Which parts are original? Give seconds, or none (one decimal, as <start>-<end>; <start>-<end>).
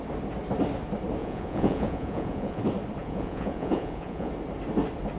0.0-1.2; 2.6-3.0; 4.3-5.2